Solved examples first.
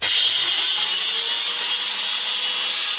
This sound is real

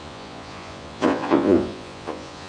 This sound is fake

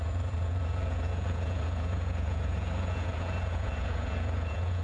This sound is fake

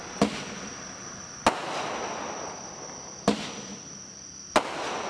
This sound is real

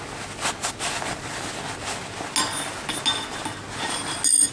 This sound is real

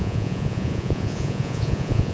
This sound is fake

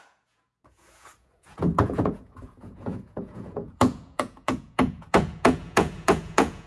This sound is fake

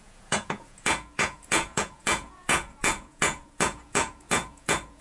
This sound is fake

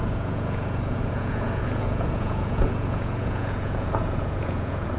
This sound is fake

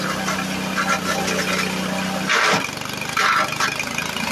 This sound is real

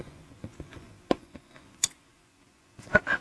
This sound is fake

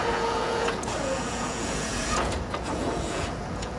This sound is fake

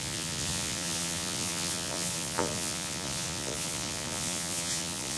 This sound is fake